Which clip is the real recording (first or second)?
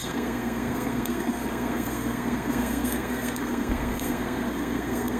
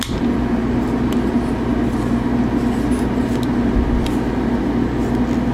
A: second